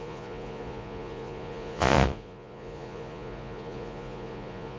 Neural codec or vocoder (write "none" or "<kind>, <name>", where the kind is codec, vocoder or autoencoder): vocoder, Vocos